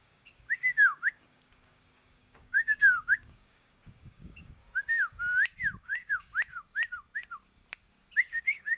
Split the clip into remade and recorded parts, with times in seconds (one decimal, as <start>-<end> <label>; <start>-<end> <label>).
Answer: 0.0-4.6 remade; 4.6-5.8 recorded; 5.8-6.3 remade; 6.3-8.4 recorded; 8.4-8.8 remade